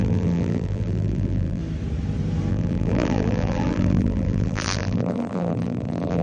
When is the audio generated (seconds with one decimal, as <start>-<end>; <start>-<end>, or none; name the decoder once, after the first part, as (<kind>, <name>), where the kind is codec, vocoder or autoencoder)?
0.0-1.6 (vocoder, BigVGAN v2); 2.5-6.2